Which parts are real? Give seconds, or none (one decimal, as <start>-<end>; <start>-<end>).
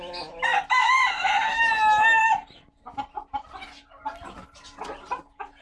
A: 0.0-5.6